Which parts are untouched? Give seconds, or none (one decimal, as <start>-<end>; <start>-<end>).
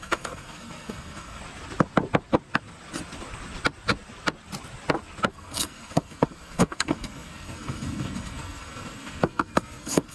1.4-5.3